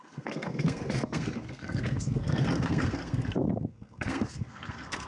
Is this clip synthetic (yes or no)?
yes